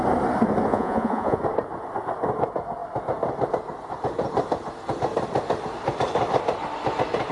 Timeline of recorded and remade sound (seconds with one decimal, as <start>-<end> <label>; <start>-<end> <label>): 0.0-0.7 recorded; 0.7-1.4 remade; 1.4-7.3 recorded

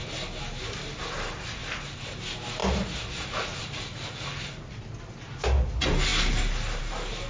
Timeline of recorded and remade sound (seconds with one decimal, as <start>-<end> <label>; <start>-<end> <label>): 0.0-7.3 recorded

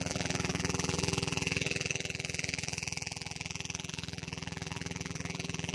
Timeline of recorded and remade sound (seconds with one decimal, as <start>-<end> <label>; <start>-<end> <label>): 0.0-5.7 remade